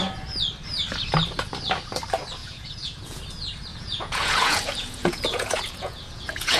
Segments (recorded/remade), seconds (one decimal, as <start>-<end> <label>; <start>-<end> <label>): 0.0-2.4 recorded; 2.4-3.2 remade; 3.2-3.7 recorded; 3.7-6.6 remade